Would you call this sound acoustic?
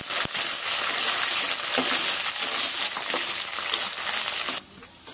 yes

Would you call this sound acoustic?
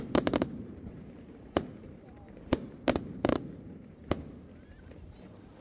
no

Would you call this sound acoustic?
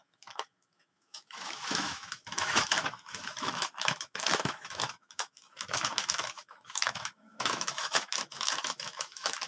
no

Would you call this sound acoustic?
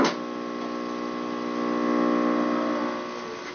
yes